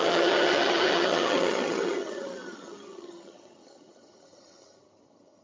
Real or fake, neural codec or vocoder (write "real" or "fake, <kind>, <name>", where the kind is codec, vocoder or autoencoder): fake, vocoder, HiFi-GAN